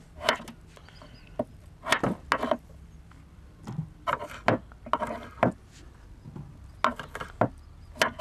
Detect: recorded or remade recorded